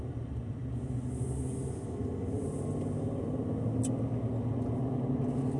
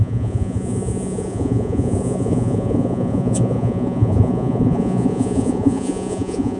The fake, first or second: second